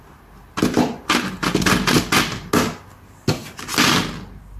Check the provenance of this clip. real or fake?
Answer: real